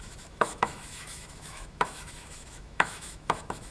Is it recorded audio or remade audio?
remade